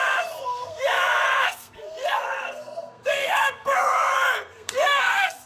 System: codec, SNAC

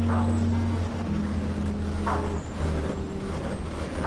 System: none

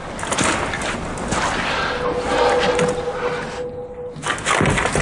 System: none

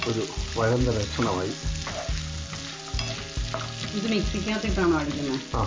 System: none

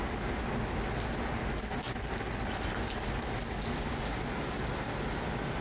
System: none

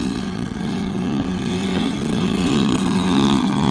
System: vocoder, WaveNeXt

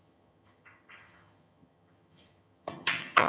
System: vocoder, HiFi-GAN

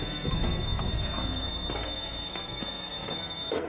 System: codec, SNAC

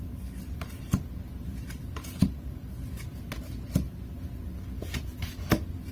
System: none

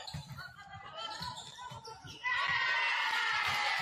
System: vocoder, BigVGAN v2